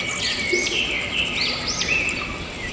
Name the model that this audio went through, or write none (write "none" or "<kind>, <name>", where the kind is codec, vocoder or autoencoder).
none